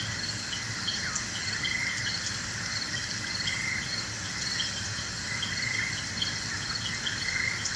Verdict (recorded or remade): recorded